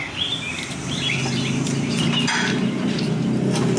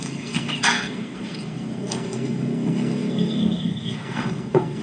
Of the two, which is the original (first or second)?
first